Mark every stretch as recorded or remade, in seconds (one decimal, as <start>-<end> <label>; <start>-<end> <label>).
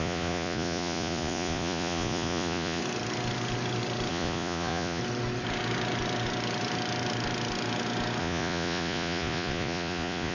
0.0-2.8 remade; 2.8-4.1 recorded; 4.1-5.0 remade; 5.0-8.2 recorded; 8.2-10.3 remade